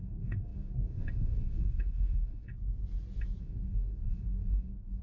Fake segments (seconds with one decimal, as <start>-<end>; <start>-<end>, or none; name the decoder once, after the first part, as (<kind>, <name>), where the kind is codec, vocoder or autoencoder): 0.0-2.5 (codec, DAC); 3.4-5.0